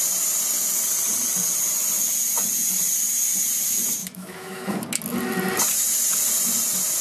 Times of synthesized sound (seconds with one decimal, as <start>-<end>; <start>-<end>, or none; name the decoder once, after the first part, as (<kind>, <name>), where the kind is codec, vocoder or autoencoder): 4.0-5.0 (autoencoder, DAC-VAE)